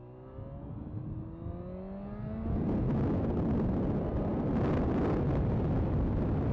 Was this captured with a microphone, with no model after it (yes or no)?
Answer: yes